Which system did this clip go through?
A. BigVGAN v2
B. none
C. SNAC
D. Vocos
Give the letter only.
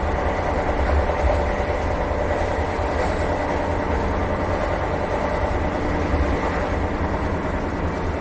B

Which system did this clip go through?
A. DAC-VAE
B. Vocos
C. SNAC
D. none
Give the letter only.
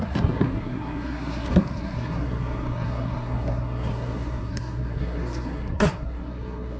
C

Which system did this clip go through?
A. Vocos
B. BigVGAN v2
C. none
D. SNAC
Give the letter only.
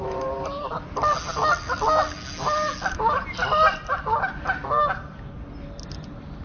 C